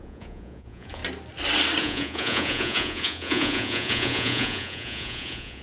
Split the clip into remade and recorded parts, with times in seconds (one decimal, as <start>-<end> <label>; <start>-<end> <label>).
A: 0.0-1.0 remade; 1.0-1.8 recorded; 1.8-5.6 remade